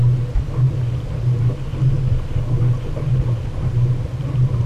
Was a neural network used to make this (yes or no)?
no